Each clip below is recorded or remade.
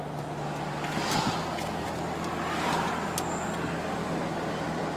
recorded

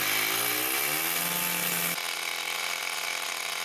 recorded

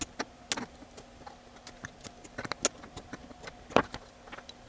recorded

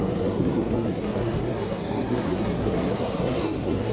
remade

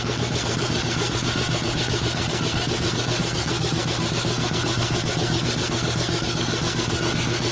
remade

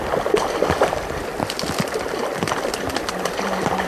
recorded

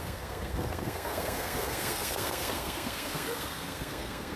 remade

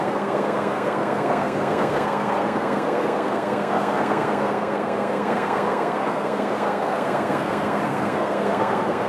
remade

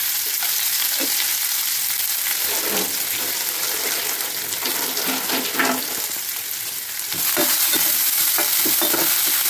recorded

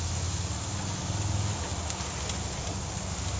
recorded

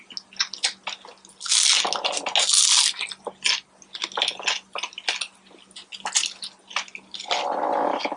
recorded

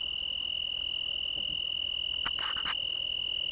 recorded